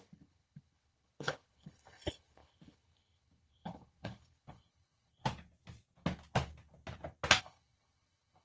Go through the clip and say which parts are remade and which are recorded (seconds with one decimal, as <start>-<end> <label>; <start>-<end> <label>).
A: 0.0-5.1 remade; 5.1-7.4 recorded; 7.4-8.4 remade